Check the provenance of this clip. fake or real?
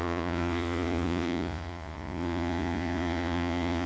fake